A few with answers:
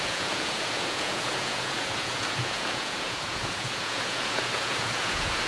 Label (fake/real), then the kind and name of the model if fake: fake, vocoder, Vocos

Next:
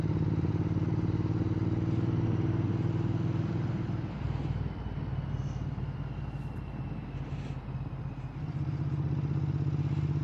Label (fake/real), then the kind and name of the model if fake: real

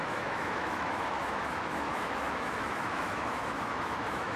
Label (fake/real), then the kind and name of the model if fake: fake, autoencoder, DAC-VAE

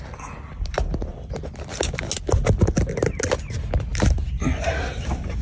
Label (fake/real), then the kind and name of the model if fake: real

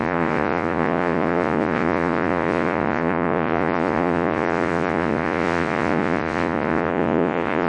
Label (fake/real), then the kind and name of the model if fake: fake, vocoder, Vocos